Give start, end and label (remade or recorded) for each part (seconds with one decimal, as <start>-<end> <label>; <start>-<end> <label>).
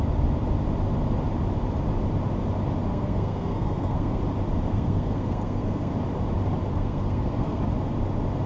0.0-2.9 recorded; 2.9-4.2 remade; 4.2-4.7 recorded; 4.7-5.9 remade; 5.9-6.7 recorded; 6.7-7.6 remade; 7.6-8.5 recorded